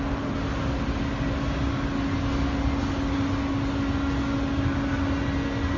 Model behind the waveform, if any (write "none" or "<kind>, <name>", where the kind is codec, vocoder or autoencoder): none